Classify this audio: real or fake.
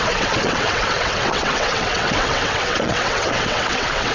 fake